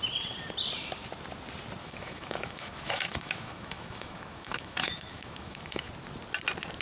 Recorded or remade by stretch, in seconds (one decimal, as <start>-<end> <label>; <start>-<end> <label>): 0.0-1.8 recorded; 1.8-5.9 remade; 5.9-6.8 recorded